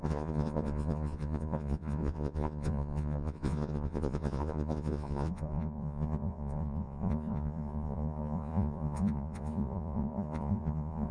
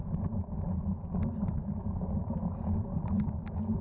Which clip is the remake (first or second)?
first